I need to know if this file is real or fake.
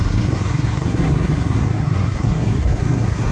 fake